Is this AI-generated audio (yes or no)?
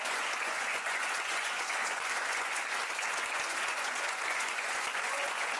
yes